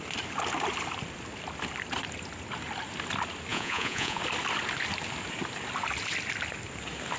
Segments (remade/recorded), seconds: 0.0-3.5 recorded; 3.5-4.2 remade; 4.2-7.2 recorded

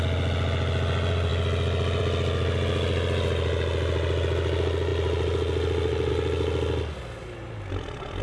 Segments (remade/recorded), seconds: 0.0-8.2 recorded